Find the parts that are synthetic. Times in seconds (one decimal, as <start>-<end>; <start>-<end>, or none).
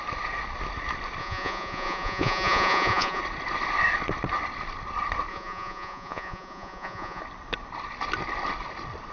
1.2-3.2; 5.3-7.2